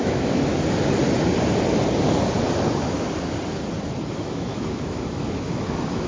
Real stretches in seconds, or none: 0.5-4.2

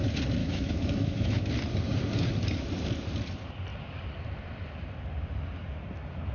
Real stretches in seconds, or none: 0.0-0.4; 1.5-6.3